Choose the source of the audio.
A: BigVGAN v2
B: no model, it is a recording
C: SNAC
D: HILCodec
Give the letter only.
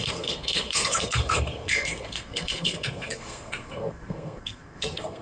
C